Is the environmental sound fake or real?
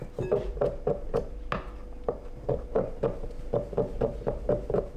real